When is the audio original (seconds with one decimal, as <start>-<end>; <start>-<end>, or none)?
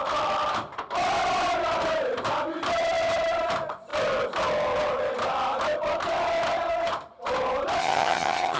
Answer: 0.0-7.8